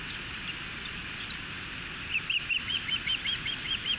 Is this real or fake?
real